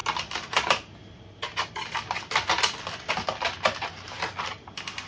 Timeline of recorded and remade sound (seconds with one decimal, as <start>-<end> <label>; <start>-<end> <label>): 0.0-5.1 recorded